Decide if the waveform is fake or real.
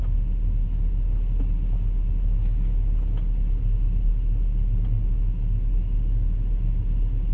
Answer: real